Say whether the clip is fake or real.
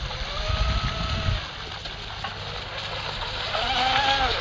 real